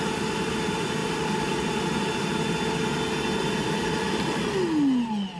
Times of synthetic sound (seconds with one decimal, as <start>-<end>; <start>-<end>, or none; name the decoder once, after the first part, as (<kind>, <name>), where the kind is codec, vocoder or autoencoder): 1.0-1.7 (vocoder, BigVGAN v2); 3.4-4.6